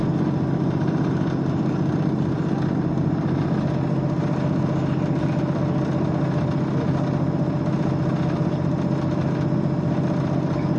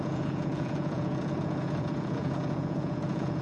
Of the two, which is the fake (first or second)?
second